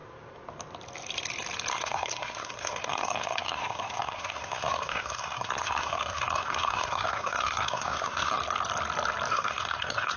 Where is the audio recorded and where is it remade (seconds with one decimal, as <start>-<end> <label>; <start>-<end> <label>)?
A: 0.0-1.7 recorded; 1.7-8.4 remade; 8.4-9.3 recorded; 9.3-10.2 remade